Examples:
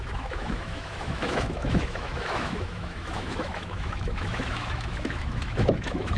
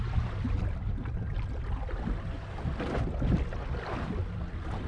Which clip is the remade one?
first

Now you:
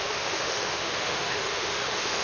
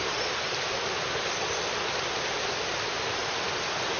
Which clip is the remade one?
first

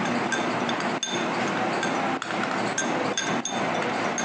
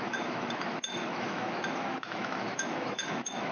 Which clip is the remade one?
second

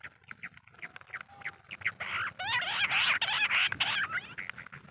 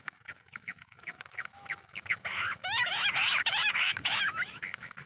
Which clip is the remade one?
second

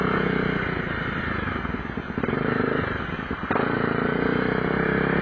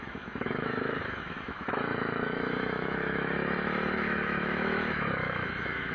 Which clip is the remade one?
second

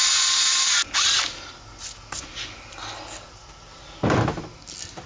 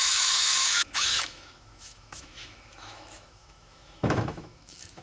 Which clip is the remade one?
second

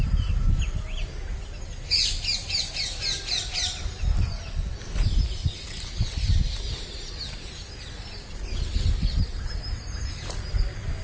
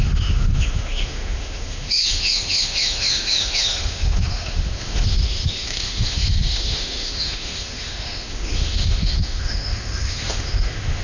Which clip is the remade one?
second